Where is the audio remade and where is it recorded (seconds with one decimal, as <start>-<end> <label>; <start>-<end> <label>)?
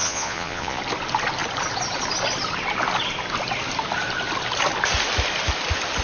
0.0-0.8 remade; 0.8-6.0 recorded